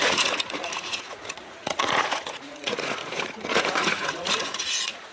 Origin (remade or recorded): remade